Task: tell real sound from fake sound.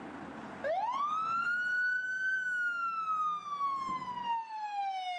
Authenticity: real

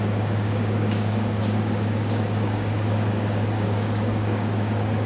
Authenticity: fake